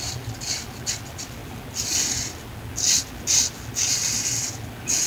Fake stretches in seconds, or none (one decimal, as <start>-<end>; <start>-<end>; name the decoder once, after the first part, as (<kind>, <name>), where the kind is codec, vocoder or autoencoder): none